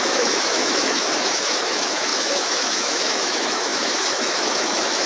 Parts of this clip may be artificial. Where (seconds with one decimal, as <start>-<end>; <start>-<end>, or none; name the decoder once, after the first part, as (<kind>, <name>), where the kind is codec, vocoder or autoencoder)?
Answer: 0.0-5.1 (autoencoder, DAC-VAE)